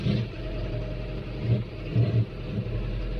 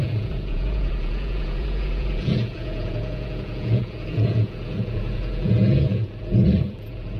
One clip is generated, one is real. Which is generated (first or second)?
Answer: second